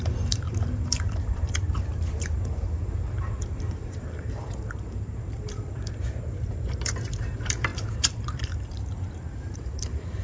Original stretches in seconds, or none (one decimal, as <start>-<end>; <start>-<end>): none

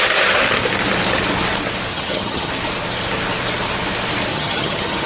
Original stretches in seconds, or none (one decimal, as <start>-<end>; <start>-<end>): 0.0-1.9; 2.5-4.3

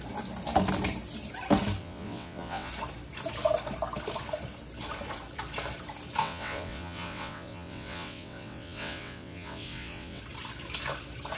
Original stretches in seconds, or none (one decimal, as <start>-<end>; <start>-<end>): 0.0-1.8; 2.7-6.2; 10.2-11.4

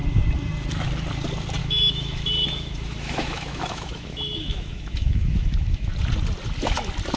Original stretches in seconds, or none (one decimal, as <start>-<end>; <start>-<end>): 0.0-1.6; 5.9-7.2

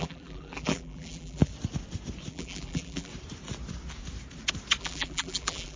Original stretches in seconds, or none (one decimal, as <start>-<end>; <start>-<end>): 1.5-2.3; 3.1-4.8

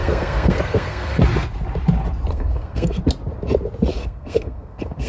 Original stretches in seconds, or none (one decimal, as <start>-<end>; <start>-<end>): 1.2-2.3; 3.0-3.9

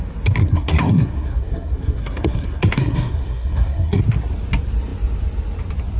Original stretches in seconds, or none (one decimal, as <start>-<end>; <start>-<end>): 0.0-0.4; 4.0-6.0